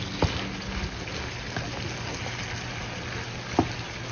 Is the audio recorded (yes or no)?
yes